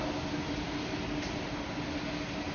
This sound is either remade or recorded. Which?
recorded